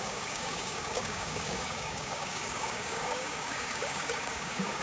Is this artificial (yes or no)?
yes